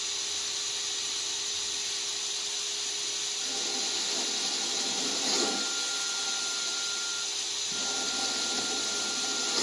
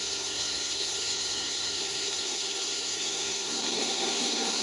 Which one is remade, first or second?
second